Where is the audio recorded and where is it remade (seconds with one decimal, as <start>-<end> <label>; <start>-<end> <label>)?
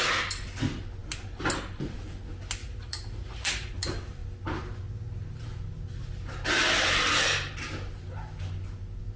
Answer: 0.0-2.6 recorded; 2.6-3.7 remade; 3.7-9.2 recorded